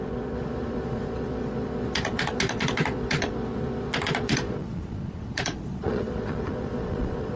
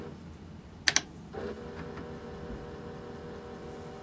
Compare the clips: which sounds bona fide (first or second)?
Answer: second